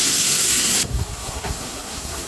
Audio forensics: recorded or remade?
remade